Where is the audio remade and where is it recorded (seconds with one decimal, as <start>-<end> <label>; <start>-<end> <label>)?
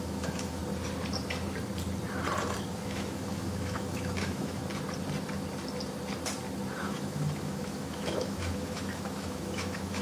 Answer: 0.0-0.6 remade; 0.6-2.7 recorded; 2.7-4.6 remade; 4.6-6.8 recorded; 6.8-10.0 remade